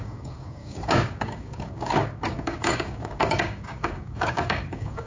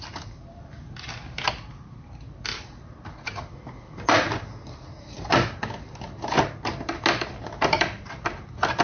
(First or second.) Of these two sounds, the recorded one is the second